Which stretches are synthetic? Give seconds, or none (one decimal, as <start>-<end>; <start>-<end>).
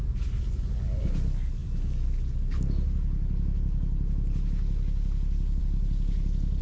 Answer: none